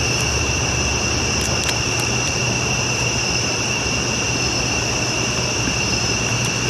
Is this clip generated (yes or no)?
no